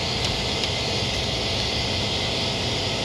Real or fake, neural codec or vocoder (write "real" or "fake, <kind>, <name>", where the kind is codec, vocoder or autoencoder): real